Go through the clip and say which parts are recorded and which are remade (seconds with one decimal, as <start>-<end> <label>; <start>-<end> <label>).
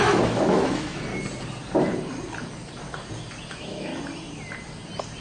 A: 0.0-1.1 remade; 1.1-3.5 recorded; 3.5-3.9 remade; 3.9-5.2 recorded